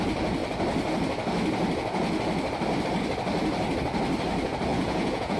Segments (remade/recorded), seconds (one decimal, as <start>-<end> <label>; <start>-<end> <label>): 0.0-4.7 recorded; 4.7-5.4 remade